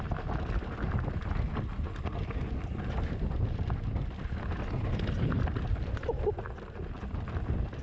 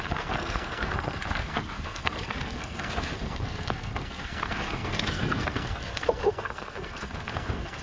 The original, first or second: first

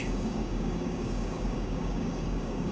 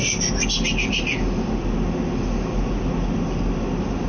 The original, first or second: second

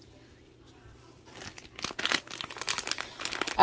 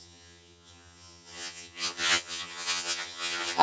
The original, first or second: first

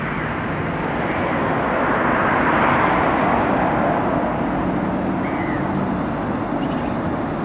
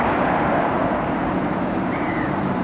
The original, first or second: first